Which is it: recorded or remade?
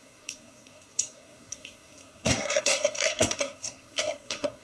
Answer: remade